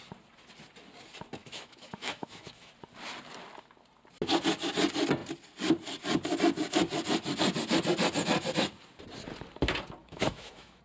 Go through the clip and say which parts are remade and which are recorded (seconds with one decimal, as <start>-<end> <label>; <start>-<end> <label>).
0.0-1.4 recorded; 1.4-2.7 remade; 2.7-10.0 recorded; 10.0-10.8 remade